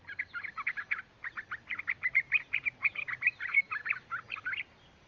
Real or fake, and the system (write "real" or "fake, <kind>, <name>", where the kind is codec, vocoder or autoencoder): fake, vocoder, BigVGAN v2